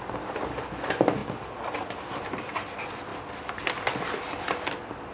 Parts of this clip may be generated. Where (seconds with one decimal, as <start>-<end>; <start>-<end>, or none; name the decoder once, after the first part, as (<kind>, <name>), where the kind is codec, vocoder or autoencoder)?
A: none